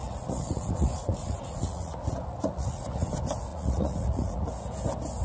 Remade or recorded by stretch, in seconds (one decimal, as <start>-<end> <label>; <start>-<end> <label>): 0.0-3.1 remade; 3.1-3.5 recorded; 3.5-4.5 remade; 4.5-5.2 recorded